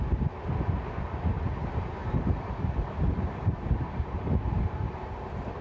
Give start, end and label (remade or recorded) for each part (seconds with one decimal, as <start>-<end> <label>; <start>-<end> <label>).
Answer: 0.0-2.0 recorded; 2.0-5.6 remade